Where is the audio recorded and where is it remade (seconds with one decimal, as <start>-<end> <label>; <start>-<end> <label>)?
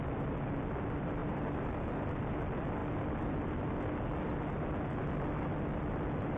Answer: 0.0-1.2 recorded; 1.2-2.4 remade; 2.4-6.4 recorded